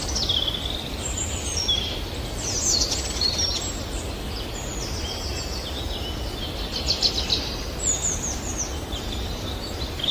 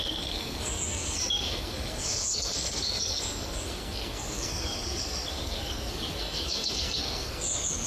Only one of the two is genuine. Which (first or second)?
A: first